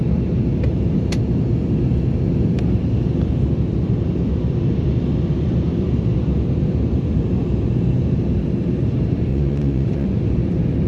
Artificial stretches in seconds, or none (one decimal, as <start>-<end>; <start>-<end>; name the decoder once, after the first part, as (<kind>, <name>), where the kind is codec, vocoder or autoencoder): 9.3-10.1 (vocoder, Vocos)